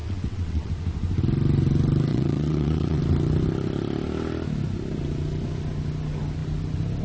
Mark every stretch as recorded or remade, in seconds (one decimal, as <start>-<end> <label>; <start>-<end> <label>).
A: 0.0-0.7 remade; 0.7-2.1 recorded; 2.1-3.0 remade; 3.0-7.0 recorded